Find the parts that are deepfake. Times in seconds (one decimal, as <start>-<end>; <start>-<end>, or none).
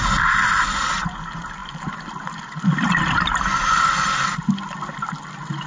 none